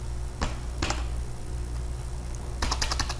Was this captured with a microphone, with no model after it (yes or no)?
yes